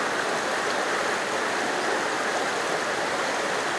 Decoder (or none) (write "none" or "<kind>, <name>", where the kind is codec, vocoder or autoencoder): none